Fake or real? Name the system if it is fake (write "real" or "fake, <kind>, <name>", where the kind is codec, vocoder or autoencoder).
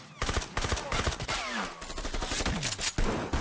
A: real